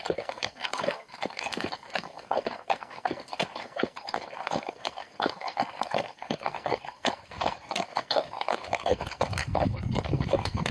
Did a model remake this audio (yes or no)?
yes